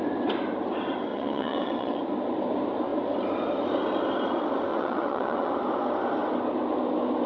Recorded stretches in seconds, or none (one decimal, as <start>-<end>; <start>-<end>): 0.0-1.1; 2.0-4.7; 5.5-7.3